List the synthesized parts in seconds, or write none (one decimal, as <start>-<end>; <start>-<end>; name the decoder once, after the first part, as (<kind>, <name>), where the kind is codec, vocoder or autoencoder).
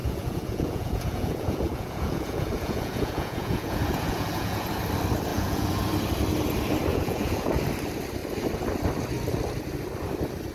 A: 0.0-4.8 (vocoder, Vocos); 5.3-5.9; 6.9-7.5